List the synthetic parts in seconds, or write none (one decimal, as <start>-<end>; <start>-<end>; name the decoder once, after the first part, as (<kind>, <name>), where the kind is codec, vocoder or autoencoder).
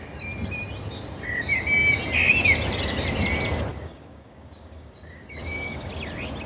3.7-5.9 (codec, DAC)